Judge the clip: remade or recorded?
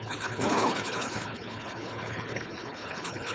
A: remade